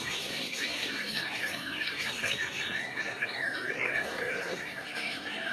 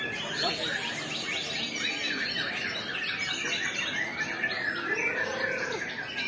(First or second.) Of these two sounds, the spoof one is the first